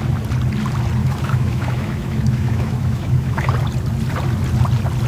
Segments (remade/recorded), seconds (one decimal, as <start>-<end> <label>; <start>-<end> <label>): 0.0-1.0 recorded; 1.0-3.5 remade; 3.5-5.1 recorded